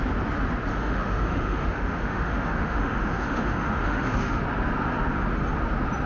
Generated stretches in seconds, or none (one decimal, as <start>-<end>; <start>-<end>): 0.7-4.4